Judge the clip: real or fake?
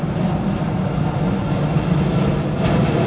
real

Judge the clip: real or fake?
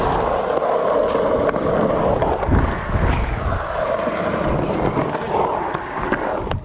real